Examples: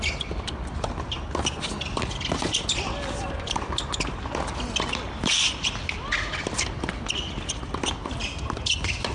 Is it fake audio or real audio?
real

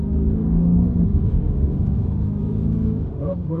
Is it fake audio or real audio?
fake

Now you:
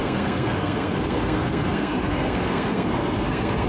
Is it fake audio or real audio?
fake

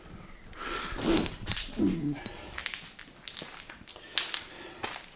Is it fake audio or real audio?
real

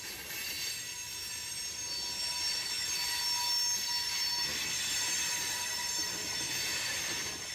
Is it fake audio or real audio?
real